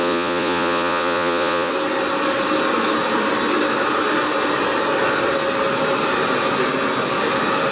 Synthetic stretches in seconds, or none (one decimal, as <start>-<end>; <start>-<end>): 0.0-1.7